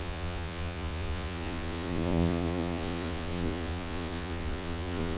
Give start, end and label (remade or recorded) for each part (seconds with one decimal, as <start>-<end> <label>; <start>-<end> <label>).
0.0-5.2 remade